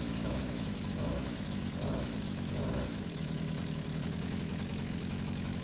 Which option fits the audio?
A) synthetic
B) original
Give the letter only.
A